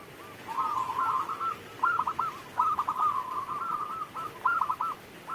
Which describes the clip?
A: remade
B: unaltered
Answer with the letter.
B